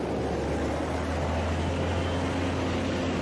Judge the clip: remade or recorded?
recorded